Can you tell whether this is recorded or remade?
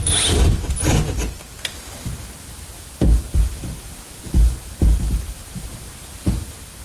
recorded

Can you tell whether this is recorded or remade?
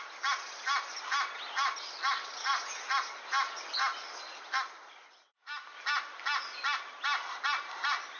recorded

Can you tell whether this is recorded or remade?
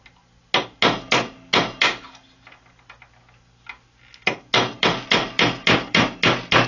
recorded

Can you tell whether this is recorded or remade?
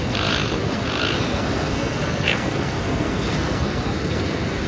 remade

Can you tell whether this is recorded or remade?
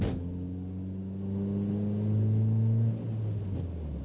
recorded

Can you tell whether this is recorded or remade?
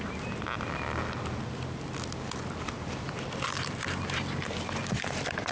remade